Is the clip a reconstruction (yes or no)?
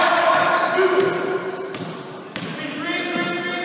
no